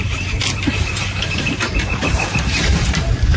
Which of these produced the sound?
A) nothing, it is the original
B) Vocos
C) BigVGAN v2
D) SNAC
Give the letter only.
C